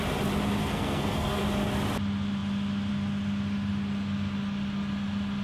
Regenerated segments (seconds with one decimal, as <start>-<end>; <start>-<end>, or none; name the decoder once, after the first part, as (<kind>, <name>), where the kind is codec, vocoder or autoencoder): 0.6-1.4 (codec, SNAC)